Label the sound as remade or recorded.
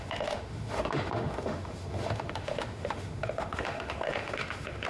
remade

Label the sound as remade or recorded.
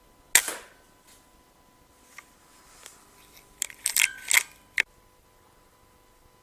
recorded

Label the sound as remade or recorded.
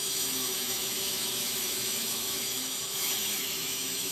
remade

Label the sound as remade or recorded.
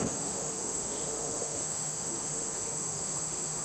remade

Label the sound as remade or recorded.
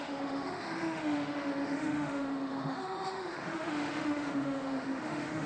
remade